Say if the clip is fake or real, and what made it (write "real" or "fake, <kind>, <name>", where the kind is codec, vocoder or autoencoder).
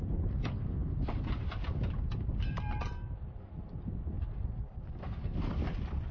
fake, vocoder, BigVGAN v2